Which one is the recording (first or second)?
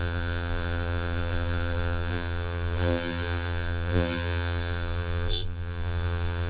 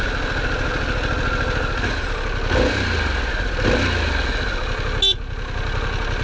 second